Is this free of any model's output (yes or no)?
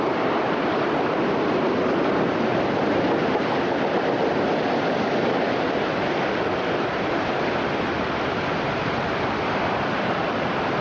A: yes